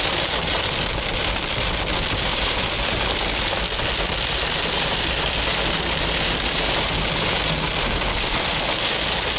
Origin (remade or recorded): recorded